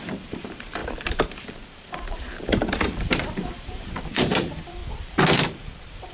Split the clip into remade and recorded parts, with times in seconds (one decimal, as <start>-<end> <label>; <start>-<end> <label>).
0.0-4.8 remade; 4.8-5.4 recorded; 5.4-6.1 remade

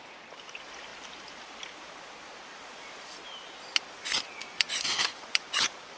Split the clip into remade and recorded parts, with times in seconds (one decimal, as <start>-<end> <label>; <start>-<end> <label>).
0.0-4.4 recorded; 4.4-5.6 remade; 5.6-6.0 recorded

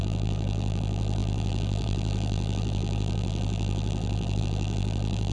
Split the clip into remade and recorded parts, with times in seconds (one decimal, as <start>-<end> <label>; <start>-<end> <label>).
0.0-5.3 remade

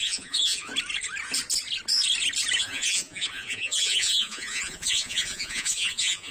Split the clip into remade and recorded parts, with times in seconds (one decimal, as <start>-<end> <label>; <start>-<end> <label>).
0.0-0.7 remade; 0.7-2.6 recorded; 2.6-6.3 remade

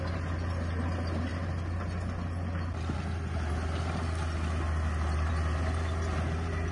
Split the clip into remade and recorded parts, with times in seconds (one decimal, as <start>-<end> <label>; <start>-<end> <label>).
0.0-6.7 recorded